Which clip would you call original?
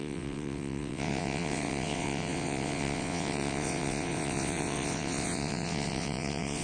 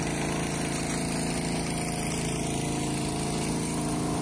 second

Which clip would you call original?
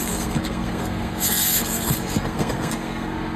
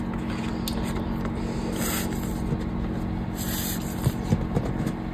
second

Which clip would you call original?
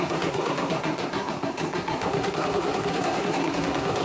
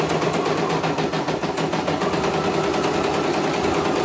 second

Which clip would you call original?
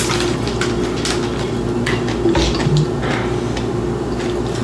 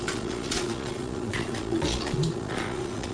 first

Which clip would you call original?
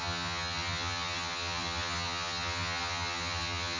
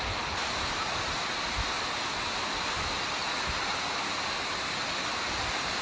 second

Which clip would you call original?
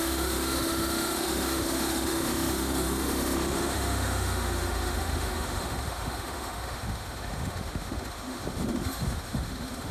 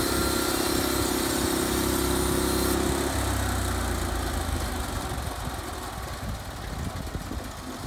second